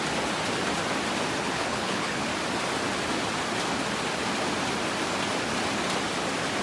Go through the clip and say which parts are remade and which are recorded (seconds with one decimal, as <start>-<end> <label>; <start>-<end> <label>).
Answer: 0.0-1.4 recorded; 1.4-2.3 remade; 2.3-6.6 recorded